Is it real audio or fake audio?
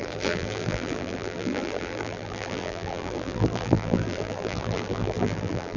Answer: fake